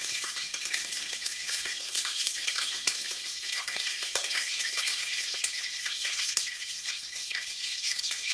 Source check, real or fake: fake